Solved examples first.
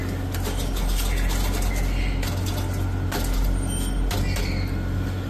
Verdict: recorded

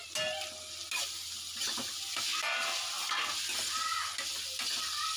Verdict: recorded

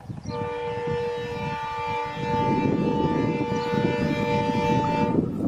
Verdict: recorded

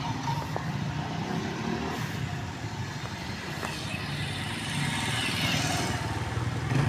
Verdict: recorded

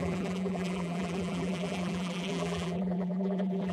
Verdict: remade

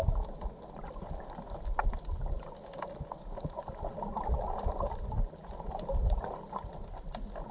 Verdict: recorded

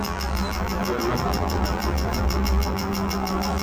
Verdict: remade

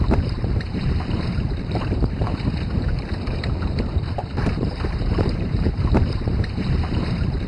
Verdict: remade